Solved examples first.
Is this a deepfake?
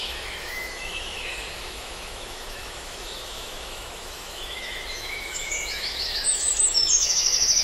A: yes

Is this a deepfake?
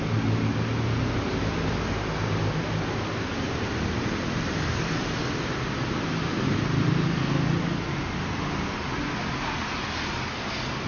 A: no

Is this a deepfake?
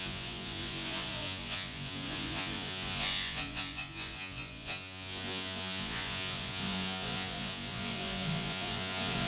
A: yes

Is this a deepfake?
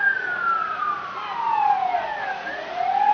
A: no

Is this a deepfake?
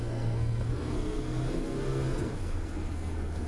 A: yes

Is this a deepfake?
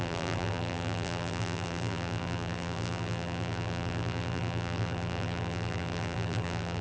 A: yes